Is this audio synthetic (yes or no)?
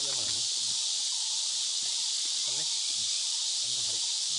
yes